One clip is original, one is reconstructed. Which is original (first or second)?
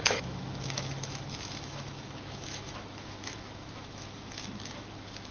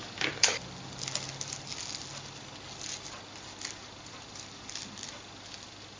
second